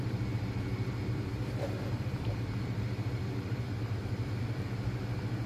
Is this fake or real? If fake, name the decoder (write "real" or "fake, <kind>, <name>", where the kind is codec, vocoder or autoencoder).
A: fake, vocoder, BigVGAN v2